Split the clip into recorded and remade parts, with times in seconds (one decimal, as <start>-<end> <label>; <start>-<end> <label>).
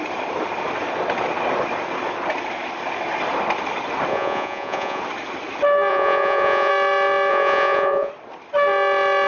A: 0.0-4.1 recorded; 4.1-5.0 remade; 5.0-5.9 recorded; 5.9-6.7 remade; 6.7-7.3 recorded; 7.3-8.1 remade; 8.1-9.3 recorded